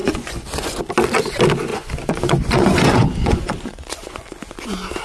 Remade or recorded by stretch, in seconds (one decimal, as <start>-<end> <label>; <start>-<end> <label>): 0.0-0.8 remade; 0.8-1.7 recorded; 1.7-4.5 remade; 4.5-5.0 recorded